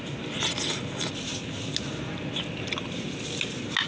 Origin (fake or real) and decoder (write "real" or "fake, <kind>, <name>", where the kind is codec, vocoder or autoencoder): real